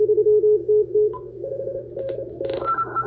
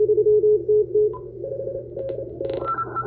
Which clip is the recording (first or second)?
second